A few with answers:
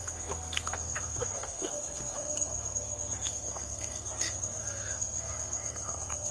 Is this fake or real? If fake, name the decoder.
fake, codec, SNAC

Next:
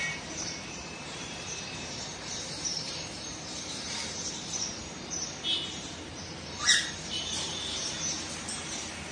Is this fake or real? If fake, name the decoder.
fake, vocoder, BigVGAN v2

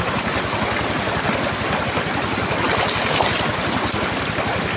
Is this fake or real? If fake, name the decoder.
real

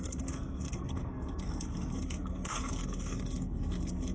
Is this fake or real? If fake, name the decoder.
fake, codec, SNAC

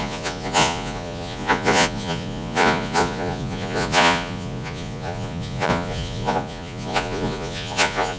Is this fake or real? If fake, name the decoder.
fake, vocoder, Vocos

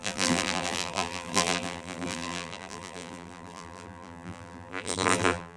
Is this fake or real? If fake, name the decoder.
fake, vocoder, BigVGAN v2